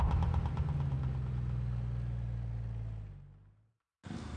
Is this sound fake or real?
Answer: real